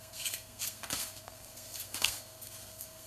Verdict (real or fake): fake